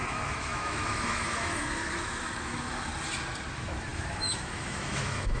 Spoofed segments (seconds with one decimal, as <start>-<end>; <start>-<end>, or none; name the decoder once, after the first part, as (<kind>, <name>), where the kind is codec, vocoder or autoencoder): 0.0-2.9 (autoencoder, DAC-VAE); 3.5-5.4